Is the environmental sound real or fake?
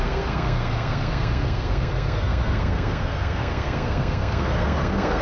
fake